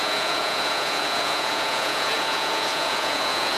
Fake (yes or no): yes